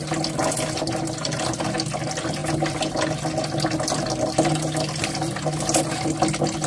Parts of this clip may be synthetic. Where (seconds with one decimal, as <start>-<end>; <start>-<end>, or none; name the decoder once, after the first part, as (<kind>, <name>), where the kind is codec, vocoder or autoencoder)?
none